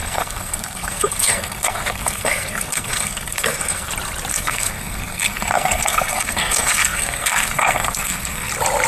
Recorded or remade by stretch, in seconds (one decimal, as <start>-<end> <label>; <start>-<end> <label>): 0.0-3.9 remade; 3.9-4.3 recorded; 4.3-8.5 remade; 8.5-8.9 recorded